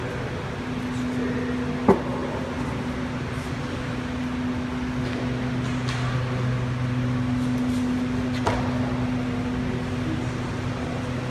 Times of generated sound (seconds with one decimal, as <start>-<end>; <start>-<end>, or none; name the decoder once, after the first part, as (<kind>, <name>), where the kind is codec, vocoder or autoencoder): none